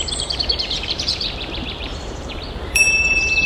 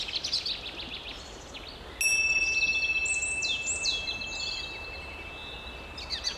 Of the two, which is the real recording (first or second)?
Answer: second